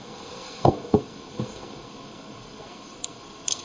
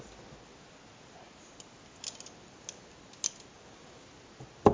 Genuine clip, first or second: second